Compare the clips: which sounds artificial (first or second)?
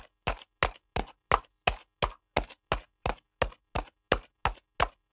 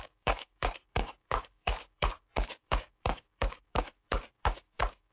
second